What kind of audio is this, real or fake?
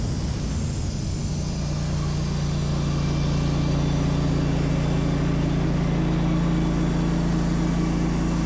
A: real